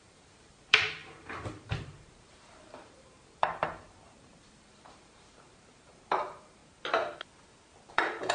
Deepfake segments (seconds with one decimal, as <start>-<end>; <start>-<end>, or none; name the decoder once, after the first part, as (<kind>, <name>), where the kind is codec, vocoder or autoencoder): 0.0-6.6 (vocoder, BigVGAN v2); 7.9-8.3